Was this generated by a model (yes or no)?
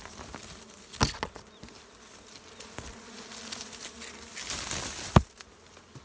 no